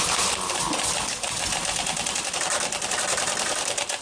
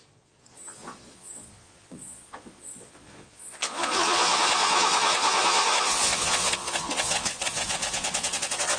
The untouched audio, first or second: first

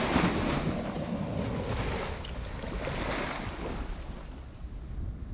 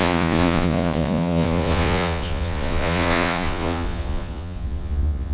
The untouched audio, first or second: first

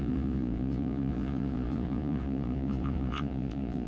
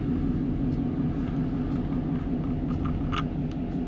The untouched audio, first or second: second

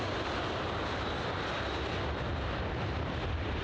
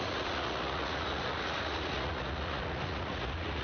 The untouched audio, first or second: first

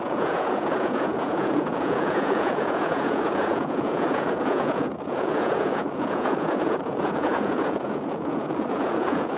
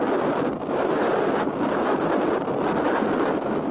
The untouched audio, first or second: second